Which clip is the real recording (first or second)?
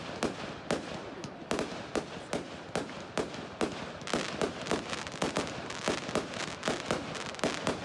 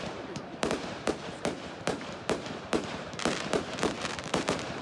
first